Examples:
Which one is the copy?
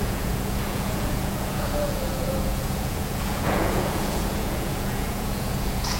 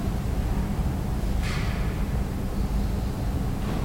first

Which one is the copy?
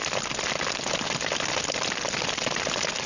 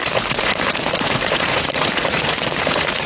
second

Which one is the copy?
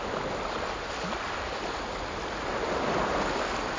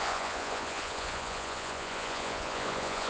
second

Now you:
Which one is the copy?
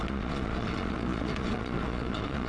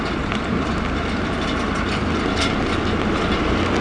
first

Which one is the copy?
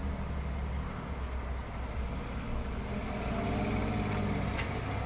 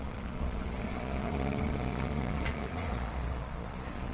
second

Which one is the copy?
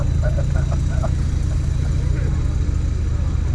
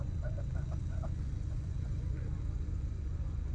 second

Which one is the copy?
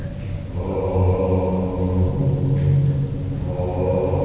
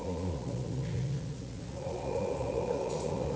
second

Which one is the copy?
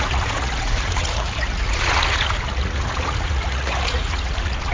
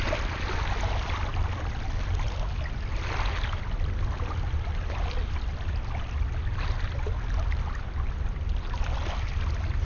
first